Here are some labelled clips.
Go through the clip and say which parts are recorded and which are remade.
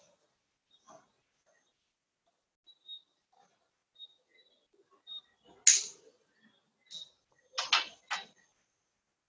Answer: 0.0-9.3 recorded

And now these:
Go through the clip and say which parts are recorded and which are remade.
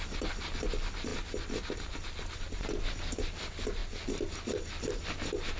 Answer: 0.0-5.6 recorded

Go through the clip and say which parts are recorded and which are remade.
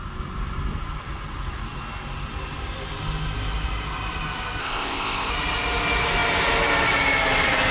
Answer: 0.0-4.6 recorded; 4.6-5.3 remade; 5.3-7.7 recorded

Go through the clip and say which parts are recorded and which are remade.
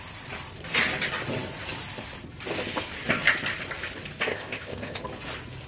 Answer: 0.0-4.3 recorded; 4.3-5.0 remade; 5.0-5.7 recorded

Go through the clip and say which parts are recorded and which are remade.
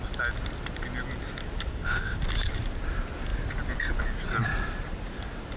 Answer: 0.0-1.7 recorded; 1.7-2.2 remade; 2.2-5.6 recorded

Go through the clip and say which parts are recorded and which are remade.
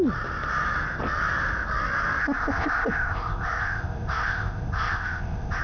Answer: 0.0-2.2 recorded; 2.2-5.6 remade